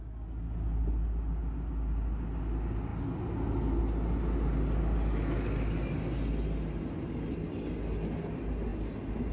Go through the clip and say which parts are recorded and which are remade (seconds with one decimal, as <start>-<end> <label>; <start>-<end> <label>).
0.0-9.3 recorded